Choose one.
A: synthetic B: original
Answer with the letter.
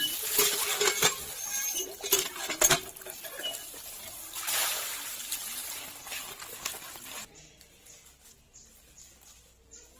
B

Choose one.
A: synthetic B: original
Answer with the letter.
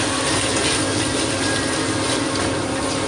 B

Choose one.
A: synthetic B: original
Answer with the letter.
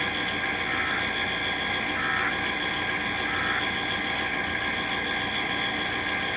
B